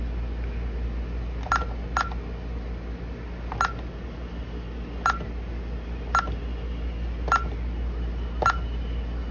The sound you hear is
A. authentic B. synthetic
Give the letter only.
A